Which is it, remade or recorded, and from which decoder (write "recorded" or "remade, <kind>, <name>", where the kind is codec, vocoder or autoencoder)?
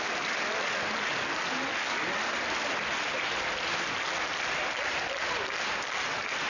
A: recorded